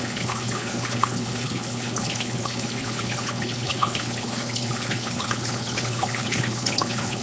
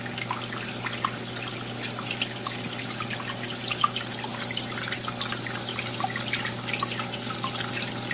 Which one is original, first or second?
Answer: second